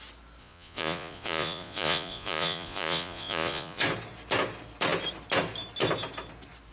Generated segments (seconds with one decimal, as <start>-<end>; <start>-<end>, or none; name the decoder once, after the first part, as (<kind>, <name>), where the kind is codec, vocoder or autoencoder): 0.4-3.8 (vocoder, Vocos)